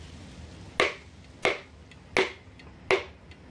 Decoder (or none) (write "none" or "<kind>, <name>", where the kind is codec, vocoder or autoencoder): none